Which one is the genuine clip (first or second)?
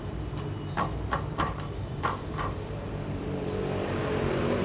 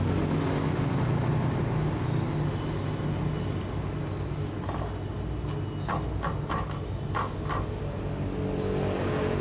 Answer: second